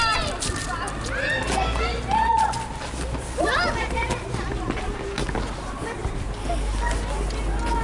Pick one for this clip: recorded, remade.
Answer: recorded